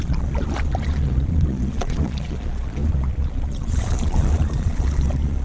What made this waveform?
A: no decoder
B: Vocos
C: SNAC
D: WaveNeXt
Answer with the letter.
B